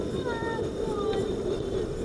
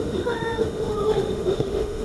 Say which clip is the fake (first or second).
second